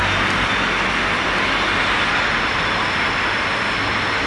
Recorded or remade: recorded